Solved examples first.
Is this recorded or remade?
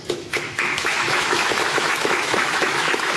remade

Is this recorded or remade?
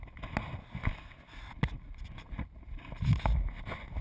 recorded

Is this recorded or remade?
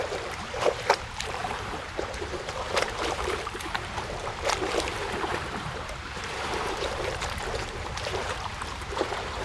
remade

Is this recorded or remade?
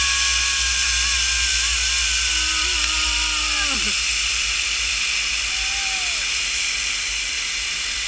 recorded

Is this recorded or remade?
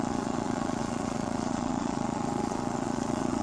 remade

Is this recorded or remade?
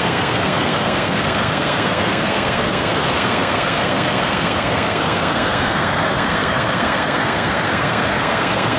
remade